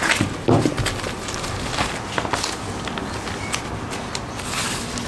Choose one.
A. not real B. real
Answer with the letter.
B